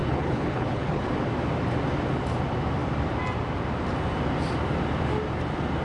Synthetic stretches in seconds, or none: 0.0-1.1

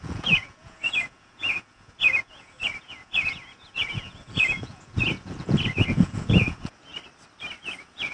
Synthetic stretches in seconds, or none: 0.0-6.9; 7.6-8.1

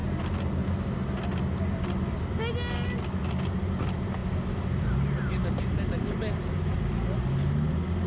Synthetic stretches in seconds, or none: none

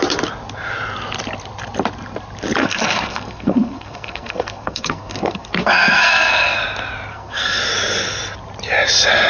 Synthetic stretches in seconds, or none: 2.6-6.6; 7.1-7.6

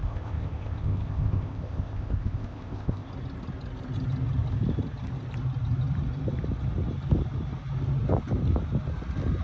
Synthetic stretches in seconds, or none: 0.0-3.1

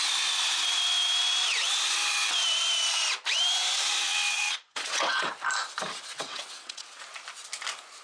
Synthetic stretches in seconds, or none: 4.1-5.3; 6.1-7.0

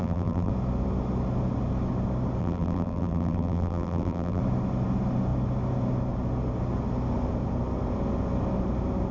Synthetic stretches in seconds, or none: 0.0-0.5; 2.4-4.4

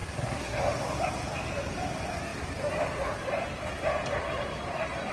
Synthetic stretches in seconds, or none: 0.0-0.6